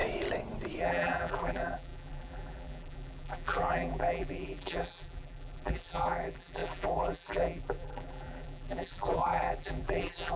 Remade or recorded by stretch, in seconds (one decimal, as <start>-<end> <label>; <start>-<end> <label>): 0.0-0.8 recorded; 0.8-10.4 remade